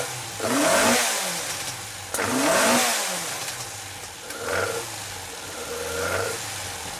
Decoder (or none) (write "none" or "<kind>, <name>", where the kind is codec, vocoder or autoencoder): none